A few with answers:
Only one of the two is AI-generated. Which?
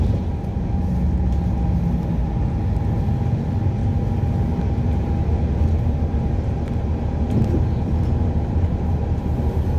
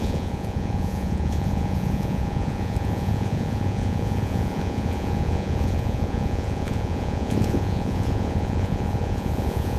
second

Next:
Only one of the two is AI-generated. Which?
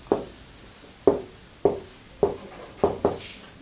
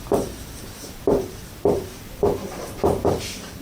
second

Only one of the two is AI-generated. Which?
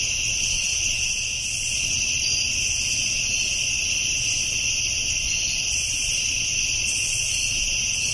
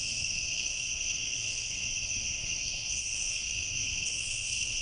second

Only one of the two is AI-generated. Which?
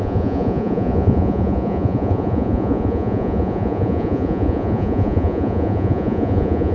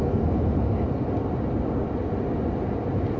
first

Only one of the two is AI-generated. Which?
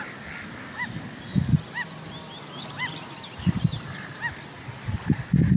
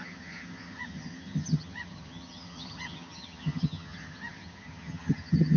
second